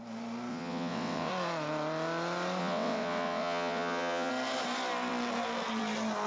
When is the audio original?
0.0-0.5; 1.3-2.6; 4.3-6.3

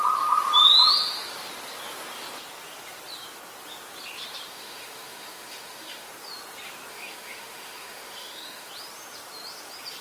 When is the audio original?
0.0-4.5; 6.1-6.9; 8.7-10.0

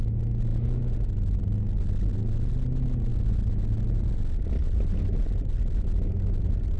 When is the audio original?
0.0-6.8

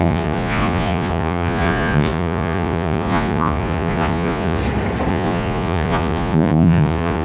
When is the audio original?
4.6-5.1

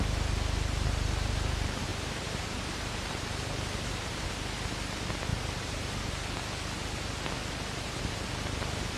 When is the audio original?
0.0-1.9; 4.3-5.3; 6.1-9.0